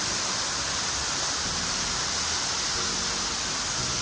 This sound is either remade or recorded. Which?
recorded